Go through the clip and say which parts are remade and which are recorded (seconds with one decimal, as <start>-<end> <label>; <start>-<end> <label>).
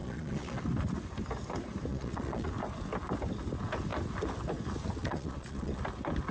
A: 0.0-0.6 remade; 0.6-1.9 recorded; 1.9-2.5 remade; 2.5-5.0 recorded; 5.0-5.8 remade; 5.8-6.3 recorded